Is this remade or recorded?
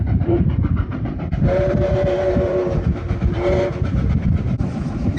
remade